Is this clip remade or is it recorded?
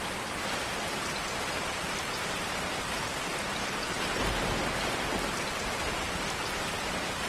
recorded